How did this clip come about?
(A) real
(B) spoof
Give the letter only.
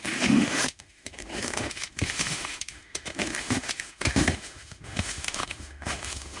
B